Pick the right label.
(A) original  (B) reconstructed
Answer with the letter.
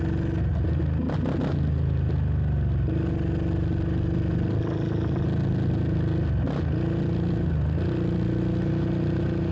A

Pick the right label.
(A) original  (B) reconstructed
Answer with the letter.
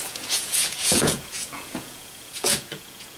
B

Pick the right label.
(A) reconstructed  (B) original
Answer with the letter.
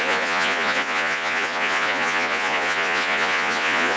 A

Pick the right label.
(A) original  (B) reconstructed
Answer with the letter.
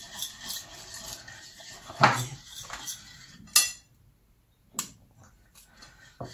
A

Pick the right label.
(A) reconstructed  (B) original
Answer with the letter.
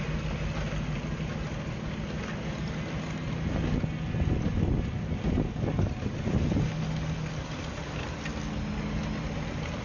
B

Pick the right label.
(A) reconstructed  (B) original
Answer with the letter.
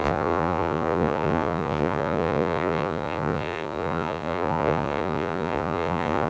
A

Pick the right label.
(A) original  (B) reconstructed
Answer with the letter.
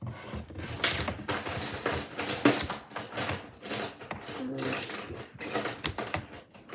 A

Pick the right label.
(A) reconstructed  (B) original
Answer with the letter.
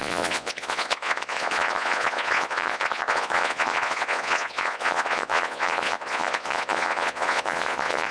A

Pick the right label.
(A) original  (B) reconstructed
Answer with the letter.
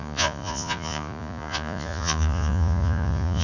B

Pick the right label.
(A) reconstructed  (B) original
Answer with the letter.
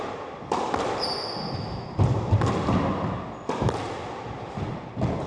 B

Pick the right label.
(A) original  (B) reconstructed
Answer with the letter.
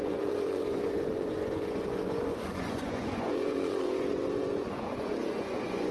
B